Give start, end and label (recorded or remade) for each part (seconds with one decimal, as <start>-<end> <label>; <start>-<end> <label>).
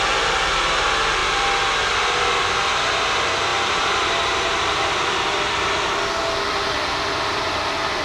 0.0-3.5 recorded; 3.5-5.7 remade; 5.7-8.0 recorded